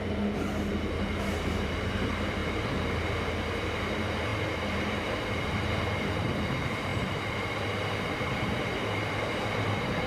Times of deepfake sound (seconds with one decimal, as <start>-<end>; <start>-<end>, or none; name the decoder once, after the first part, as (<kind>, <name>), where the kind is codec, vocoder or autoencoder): 0.0-10.1 (vocoder, BigVGAN v2)